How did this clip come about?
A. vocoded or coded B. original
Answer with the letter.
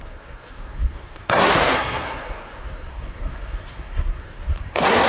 A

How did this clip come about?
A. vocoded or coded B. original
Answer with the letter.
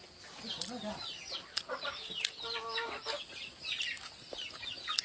B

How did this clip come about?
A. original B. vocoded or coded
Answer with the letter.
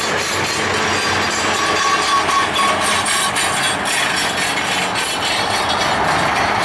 A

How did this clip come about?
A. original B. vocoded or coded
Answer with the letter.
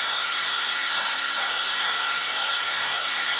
B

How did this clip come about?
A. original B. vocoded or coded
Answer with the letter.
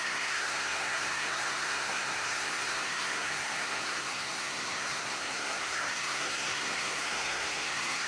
B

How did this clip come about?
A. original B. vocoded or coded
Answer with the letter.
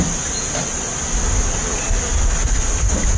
A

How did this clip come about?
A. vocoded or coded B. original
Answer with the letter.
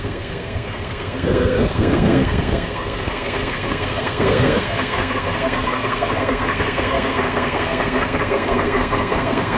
A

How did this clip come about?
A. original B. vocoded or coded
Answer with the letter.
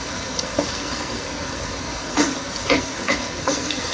B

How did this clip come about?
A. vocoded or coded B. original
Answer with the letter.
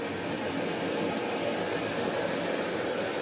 B